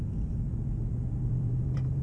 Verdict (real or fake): fake